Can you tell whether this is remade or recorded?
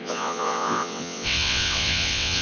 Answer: remade